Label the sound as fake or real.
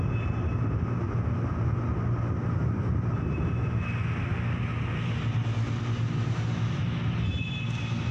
real